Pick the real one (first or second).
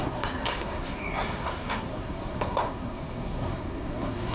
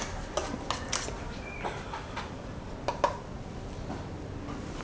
second